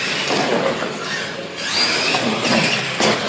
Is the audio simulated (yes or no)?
no